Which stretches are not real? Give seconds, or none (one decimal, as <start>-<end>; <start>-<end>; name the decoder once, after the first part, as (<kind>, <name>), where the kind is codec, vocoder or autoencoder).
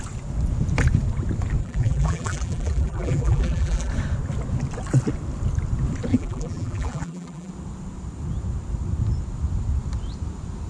1.6-3.9 (vocoder, BigVGAN v2); 6.1-7.5